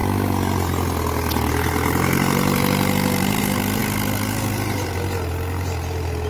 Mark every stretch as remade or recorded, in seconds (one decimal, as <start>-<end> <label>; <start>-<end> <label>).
0.0-6.3 recorded